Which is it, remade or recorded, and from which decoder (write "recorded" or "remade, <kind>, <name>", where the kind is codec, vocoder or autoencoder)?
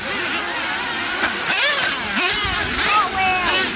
recorded